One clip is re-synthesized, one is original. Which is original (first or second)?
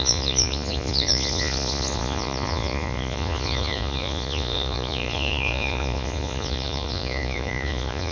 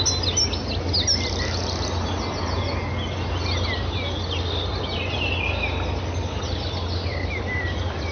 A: second